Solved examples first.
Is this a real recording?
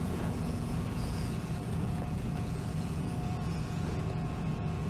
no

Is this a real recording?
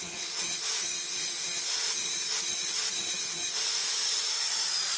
no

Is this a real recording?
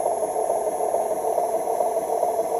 yes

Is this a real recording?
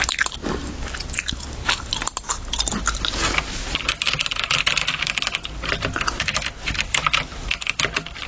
yes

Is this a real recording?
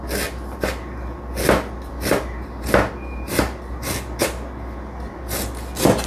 yes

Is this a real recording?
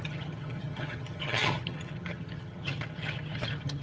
no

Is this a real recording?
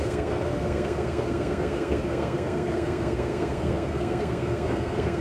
no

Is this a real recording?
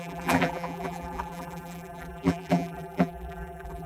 no